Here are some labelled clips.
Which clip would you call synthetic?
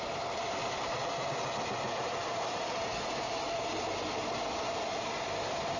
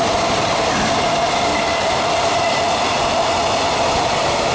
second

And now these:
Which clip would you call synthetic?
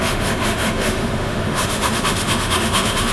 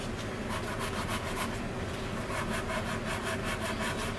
first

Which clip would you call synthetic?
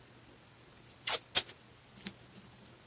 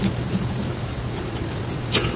second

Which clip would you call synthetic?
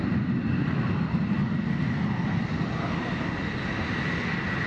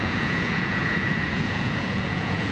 second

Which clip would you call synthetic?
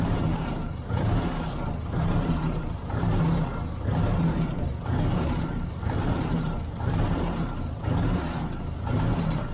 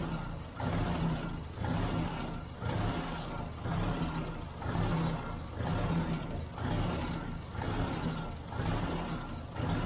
first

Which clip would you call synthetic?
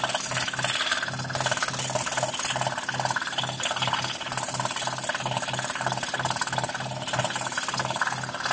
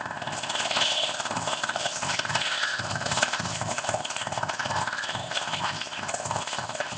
second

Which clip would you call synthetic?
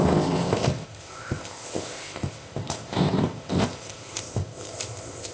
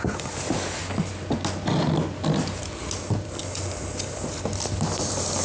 first